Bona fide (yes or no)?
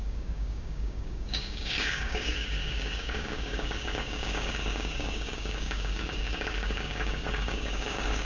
no